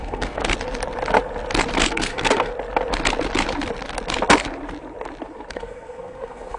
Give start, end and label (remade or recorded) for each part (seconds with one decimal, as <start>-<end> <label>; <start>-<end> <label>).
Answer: 0.0-0.4 remade; 0.4-1.9 recorded; 1.9-2.5 remade; 2.5-5.5 recorded; 5.5-6.6 remade